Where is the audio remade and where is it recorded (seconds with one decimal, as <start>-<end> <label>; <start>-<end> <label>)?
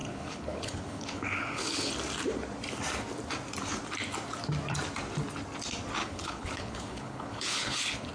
0.0-1.9 remade; 1.9-6.0 recorded; 6.0-8.1 remade